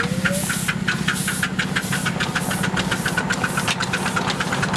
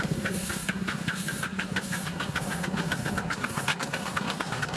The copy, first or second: second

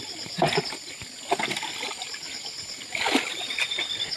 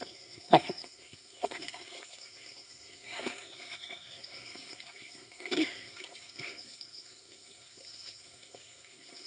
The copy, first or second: second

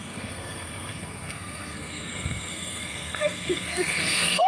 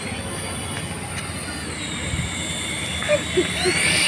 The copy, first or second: first